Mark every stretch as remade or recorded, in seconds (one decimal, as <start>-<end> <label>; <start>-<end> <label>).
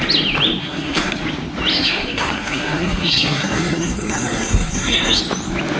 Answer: 0.0-0.6 recorded; 0.6-1.2 remade; 1.2-1.7 recorded; 1.7-5.2 remade; 5.2-5.8 recorded